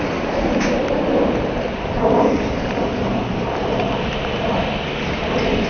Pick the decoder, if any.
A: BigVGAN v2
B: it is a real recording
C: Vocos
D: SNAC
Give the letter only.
B